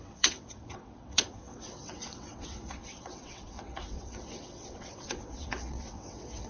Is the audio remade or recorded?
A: remade